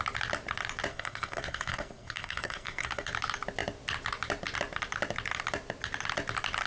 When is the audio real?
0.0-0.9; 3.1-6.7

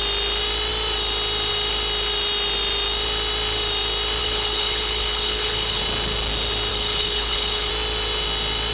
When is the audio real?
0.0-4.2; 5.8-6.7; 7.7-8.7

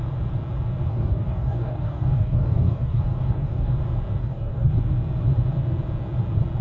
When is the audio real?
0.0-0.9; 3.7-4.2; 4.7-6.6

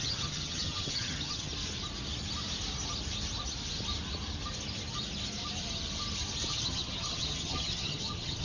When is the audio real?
1.5-6.5